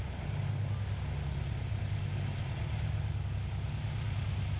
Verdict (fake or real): real